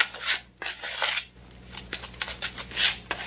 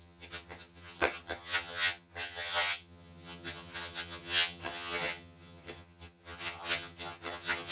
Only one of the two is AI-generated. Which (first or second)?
second